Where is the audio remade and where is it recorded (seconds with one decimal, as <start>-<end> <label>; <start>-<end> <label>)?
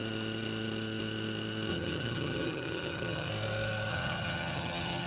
0.0-1.7 recorded; 1.7-3.3 remade; 3.3-3.9 recorded; 3.9-5.1 remade